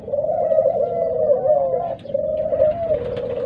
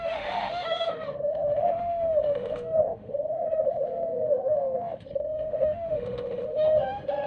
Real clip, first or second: first